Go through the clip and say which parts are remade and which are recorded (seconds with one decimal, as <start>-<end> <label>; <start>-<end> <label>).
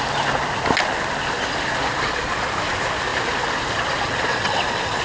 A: 0.0-4.3 recorded; 4.3-5.0 remade